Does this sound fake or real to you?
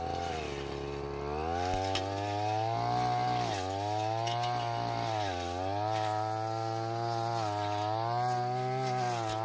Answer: real